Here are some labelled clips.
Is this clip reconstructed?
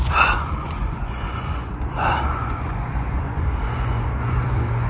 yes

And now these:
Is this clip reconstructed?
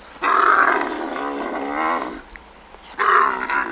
no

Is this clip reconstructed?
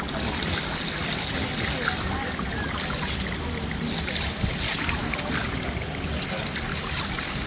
no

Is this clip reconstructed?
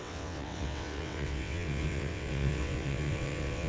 yes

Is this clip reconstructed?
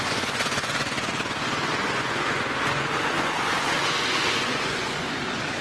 yes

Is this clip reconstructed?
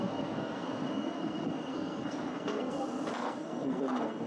yes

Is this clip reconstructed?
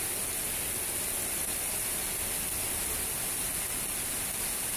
no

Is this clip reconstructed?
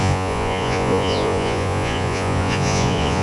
yes